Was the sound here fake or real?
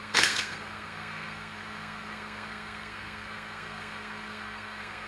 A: fake